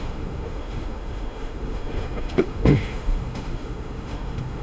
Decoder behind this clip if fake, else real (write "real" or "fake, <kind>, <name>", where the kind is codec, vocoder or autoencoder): fake, autoencoder, DAC-VAE